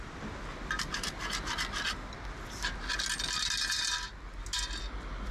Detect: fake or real real